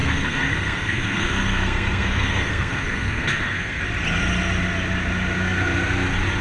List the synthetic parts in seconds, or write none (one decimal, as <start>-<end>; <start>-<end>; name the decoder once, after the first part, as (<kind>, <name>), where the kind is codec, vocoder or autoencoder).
0.0-3.8 (codec, SNAC)